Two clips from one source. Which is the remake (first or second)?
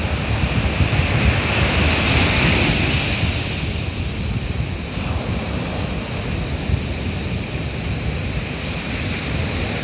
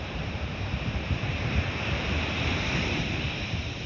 second